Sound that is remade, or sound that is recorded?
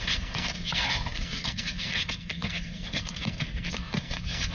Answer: remade